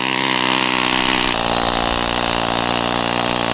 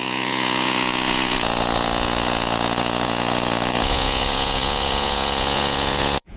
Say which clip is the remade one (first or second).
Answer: second